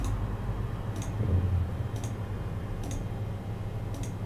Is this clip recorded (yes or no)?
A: yes